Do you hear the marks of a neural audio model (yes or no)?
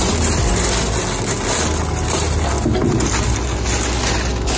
no